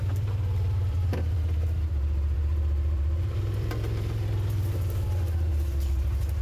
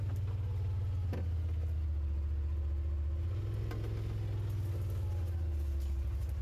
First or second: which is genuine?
second